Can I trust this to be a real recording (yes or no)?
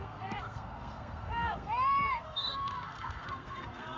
no